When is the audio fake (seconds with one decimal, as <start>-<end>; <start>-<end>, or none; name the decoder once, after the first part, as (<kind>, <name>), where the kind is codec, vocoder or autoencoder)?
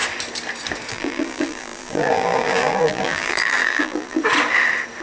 0.9-4.2 (vocoder, BigVGAN v2)